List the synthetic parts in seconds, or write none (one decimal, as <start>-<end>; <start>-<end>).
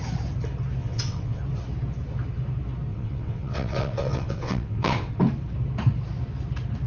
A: 0.8-1.4; 2.9-5.2